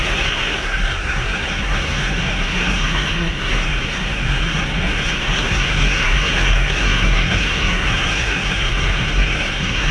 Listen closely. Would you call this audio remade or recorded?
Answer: remade